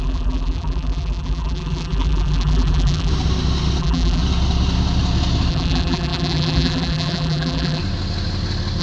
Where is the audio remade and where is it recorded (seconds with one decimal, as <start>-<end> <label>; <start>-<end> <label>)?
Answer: 0.0-3.1 remade; 3.1-3.8 recorded; 3.8-4.2 remade; 4.2-5.5 recorded; 5.5-7.8 remade; 7.8-8.8 recorded